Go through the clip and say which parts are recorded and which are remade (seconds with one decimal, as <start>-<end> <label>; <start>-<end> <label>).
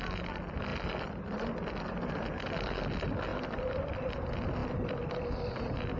0.0-0.7 recorded; 0.7-2.1 remade; 2.1-3.3 recorded; 3.3-4.0 remade; 4.0-4.6 recorded; 4.6-5.5 remade; 5.5-6.0 recorded